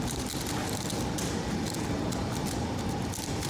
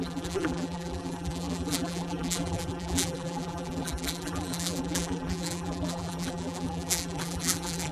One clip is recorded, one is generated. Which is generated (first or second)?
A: second